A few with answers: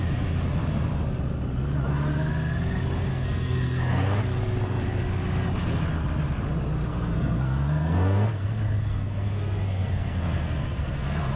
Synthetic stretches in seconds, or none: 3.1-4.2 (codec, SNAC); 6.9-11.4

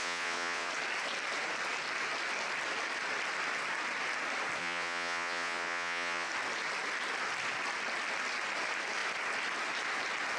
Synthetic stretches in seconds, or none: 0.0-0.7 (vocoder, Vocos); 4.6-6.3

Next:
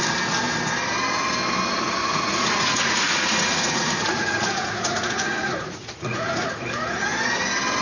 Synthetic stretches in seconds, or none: 2.0-6.6 (vocoder, Vocos)